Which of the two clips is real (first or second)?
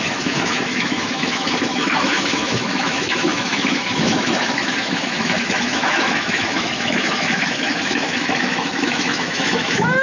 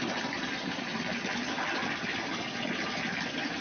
second